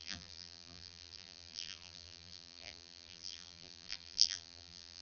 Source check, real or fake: fake